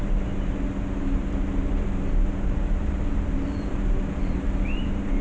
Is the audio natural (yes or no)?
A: no